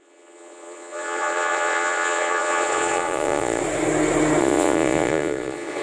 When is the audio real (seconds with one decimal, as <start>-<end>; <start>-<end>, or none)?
3.6-4.4

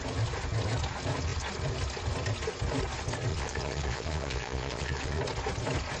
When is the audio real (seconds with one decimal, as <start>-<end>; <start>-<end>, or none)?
0.0-3.3; 5.2-6.0

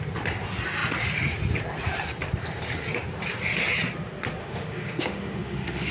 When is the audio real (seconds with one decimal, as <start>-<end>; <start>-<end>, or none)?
0.0-4.4